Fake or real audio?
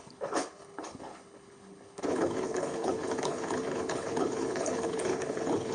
fake